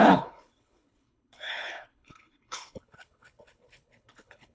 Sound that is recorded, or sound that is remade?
remade